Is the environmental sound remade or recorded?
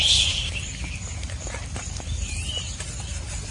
recorded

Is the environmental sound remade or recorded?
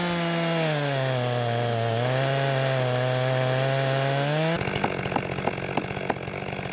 recorded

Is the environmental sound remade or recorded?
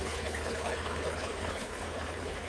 remade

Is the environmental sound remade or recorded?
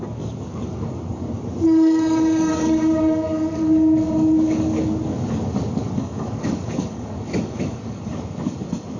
remade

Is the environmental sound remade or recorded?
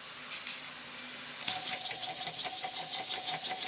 recorded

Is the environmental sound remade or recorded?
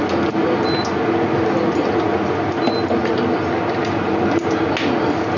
recorded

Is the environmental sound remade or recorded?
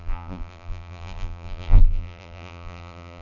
remade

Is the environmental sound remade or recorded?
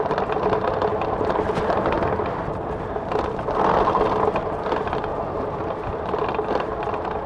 recorded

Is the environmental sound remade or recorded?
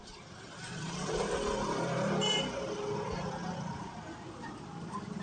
recorded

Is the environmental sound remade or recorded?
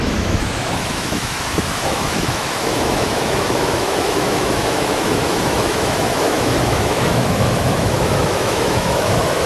remade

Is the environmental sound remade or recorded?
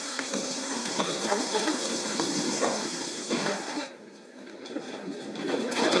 remade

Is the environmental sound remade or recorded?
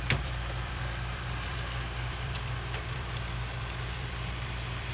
remade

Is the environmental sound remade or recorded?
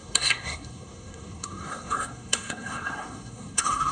remade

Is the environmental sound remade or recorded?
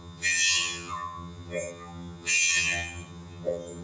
remade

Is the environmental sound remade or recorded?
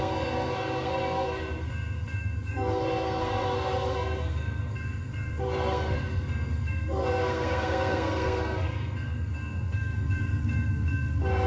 remade